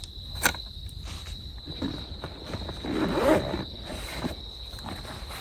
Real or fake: real